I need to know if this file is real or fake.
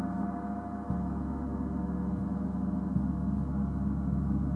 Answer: real